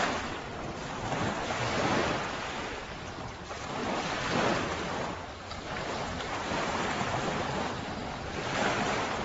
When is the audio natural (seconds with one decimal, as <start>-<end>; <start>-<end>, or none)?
0.0-5.7; 6.9-9.2